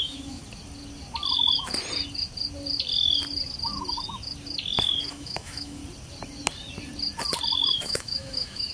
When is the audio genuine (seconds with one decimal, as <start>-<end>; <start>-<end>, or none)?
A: 0.4-5.1; 5.8-7.6